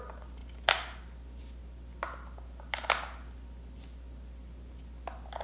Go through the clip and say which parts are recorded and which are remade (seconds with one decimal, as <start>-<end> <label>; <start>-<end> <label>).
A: 0.0-5.4 recorded